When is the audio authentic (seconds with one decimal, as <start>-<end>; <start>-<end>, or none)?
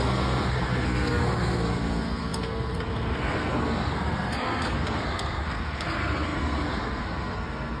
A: none